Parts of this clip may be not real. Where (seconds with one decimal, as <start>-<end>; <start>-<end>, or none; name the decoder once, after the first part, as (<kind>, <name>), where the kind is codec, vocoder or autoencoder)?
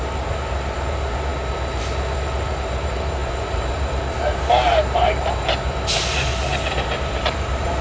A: 0.0-1.3 (vocoder, BigVGAN v2); 1.8-6.3; 7.0-7.8